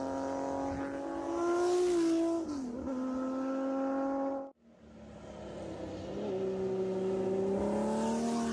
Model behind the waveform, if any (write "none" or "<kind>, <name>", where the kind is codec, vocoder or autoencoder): none